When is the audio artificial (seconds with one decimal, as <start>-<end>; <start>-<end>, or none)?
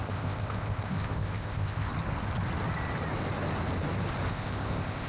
0.0-1.9; 4.3-5.1